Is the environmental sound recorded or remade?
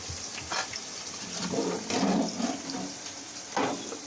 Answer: recorded